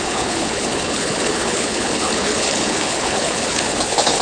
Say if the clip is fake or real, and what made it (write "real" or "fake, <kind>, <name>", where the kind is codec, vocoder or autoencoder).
fake, codec, HILCodec